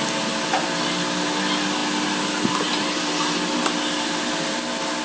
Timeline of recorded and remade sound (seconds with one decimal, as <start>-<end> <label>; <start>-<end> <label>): 0.0-5.0 recorded